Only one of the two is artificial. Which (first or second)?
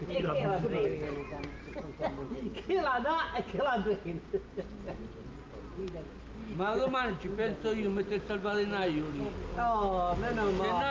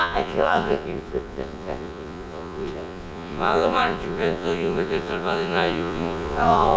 second